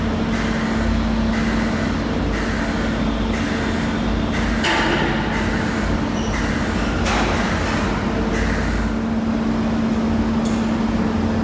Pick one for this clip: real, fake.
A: real